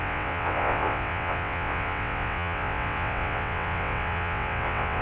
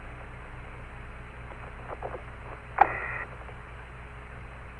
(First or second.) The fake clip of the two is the first